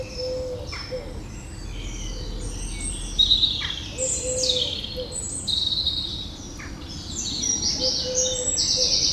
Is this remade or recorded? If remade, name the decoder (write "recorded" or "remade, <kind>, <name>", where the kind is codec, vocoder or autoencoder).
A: recorded